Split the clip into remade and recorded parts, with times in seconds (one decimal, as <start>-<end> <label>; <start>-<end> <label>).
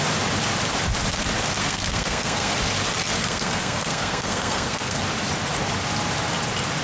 0.0-1.6 recorded; 1.6-2.5 remade; 2.5-3.2 recorded; 3.2-5.0 remade; 5.0-6.8 recorded